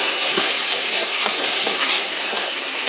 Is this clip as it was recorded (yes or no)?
no